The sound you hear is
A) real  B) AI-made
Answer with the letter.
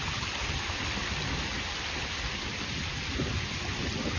A